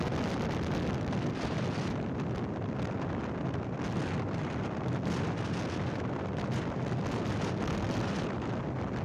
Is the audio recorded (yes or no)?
yes